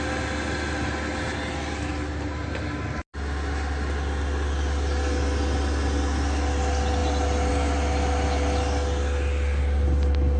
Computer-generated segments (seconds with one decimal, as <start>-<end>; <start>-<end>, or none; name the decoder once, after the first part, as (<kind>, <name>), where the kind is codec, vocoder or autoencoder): none